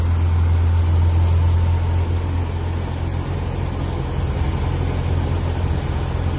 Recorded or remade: recorded